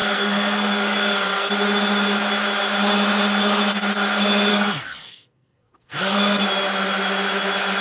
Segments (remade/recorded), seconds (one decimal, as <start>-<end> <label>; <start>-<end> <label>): 0.0-1.5 remade; 1.5-4.5 recorded; 4.5-6.4 remade; 6.4-7.8 recorded